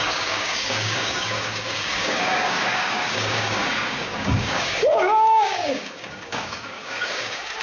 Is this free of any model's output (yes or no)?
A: no